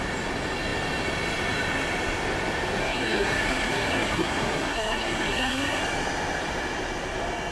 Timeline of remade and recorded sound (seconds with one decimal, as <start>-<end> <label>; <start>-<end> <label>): 0.0-2.8 recorded; 2.8-5.8 remade; 5.8-7.5 recorded